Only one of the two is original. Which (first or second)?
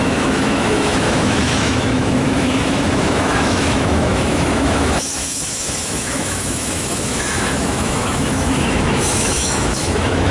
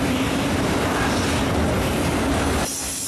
second